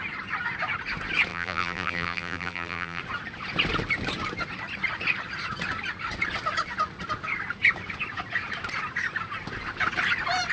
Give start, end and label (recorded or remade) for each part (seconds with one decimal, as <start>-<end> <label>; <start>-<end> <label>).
0.0-1.3 recorded; 1.3-3.0 remade; 3.0-10.5 recorded